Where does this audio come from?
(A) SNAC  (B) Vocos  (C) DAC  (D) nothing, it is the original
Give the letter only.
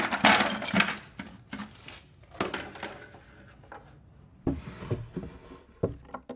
D